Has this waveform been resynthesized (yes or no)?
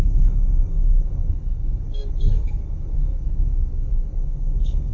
yes